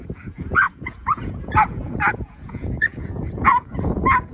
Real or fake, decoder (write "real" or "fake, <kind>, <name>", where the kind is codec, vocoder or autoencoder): fake, vocoder, Vocos